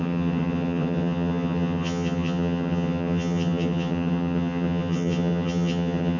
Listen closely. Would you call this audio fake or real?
fake